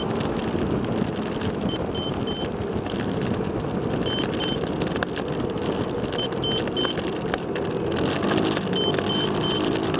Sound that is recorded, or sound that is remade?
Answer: recorded